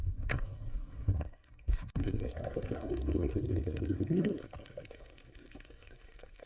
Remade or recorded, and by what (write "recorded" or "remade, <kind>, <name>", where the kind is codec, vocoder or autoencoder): remade, codec, SNAC